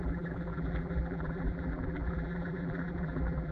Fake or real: fake